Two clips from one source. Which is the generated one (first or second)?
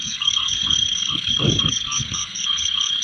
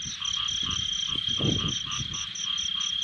first